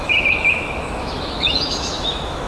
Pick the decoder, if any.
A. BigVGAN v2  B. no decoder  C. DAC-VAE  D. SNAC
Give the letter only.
C